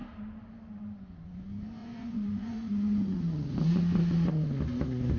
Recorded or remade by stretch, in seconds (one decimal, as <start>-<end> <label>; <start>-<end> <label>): 0.0-1.8 recorded; 1.8-3.6 remade; 3.6-5.2 recorded